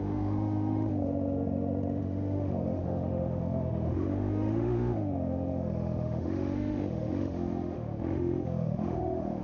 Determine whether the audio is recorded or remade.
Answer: remade